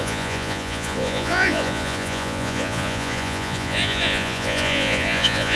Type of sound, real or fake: fake